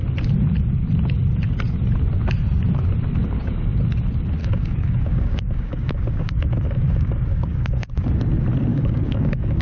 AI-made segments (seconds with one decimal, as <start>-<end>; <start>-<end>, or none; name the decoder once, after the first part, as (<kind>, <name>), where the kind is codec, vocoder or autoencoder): 3.2-3.8 (codec, DAC); 4.4-7.9; 8.7-9.6